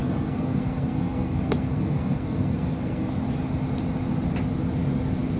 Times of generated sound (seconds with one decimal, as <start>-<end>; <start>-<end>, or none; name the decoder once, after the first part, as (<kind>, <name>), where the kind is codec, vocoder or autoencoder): 0.0-3.2 (codec, SNAC)